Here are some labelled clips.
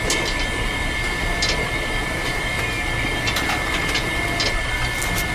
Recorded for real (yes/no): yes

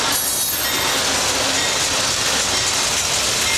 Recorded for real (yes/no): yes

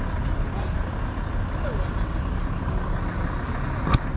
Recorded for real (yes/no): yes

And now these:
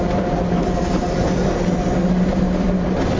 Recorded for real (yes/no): yes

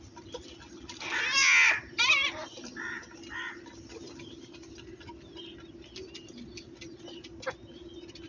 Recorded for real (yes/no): yes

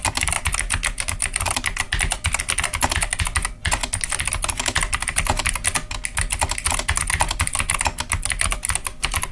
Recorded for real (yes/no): yes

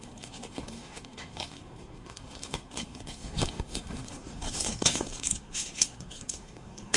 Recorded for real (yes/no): no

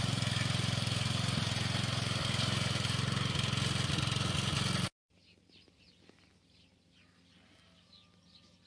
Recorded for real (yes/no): yes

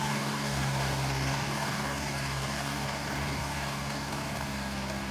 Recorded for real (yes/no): no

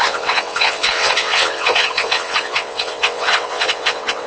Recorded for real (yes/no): no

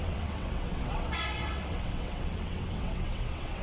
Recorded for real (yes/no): no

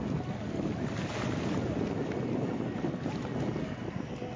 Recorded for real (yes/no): yes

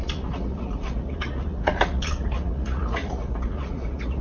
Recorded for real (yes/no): no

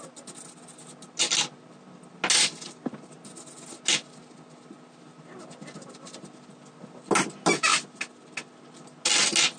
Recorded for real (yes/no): yes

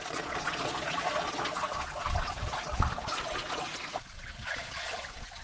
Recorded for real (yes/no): no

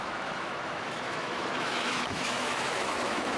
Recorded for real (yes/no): no